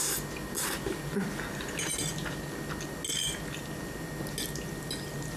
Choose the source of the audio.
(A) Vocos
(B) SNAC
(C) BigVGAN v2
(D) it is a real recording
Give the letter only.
D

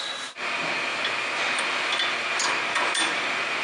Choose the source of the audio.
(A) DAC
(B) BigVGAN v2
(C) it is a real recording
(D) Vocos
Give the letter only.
C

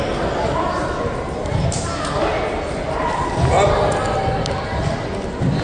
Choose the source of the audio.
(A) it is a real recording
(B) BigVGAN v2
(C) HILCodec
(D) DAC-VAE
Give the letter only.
A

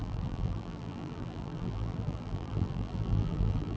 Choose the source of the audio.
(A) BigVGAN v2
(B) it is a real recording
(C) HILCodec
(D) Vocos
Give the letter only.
A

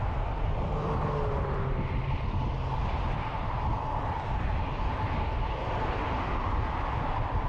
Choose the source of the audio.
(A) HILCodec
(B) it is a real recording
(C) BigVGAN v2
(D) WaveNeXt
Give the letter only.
C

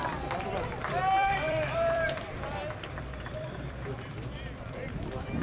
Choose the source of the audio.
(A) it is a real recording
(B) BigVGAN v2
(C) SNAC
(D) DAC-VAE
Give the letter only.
B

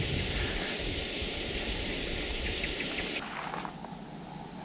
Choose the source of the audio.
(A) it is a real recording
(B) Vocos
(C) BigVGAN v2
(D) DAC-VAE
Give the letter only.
A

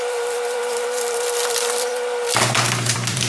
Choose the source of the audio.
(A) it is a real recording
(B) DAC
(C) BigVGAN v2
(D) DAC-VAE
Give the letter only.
C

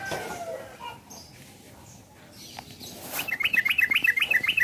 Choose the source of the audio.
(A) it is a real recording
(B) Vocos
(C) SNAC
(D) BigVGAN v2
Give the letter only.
A